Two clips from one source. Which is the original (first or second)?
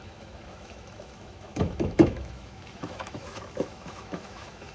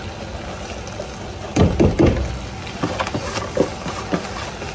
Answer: second